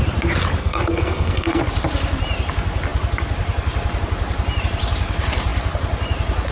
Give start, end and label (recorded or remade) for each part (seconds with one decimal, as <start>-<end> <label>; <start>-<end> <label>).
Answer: 0.0-0.6 recorded; 0.6-1.6 remade; 1.6-6.5 recorded